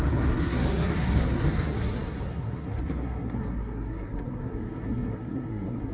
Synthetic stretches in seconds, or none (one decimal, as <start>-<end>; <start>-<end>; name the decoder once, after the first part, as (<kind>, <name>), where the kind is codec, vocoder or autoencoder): 0.0-5.9 (codec, SNAC)